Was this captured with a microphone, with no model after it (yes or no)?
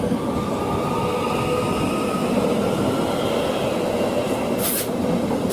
yes